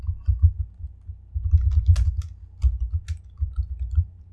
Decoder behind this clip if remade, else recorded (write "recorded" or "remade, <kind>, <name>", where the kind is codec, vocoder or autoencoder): recorded